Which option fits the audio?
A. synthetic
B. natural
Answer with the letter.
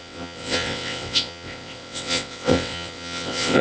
A